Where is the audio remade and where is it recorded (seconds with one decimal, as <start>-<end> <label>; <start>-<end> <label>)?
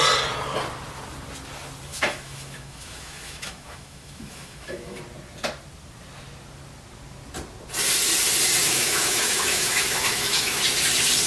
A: 0.0-1.9 recorded; 1.9-5.0 remade; 5.0-8.6 recorded; 8.6-10.6 remade; 10.6-11.3 recorded